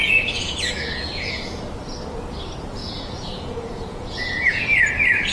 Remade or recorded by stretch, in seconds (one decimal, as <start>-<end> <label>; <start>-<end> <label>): 0.0-1.6 remade; 1.6-2.8 recorded; 2.8-4.6 remade; 4.6-5.3 recorded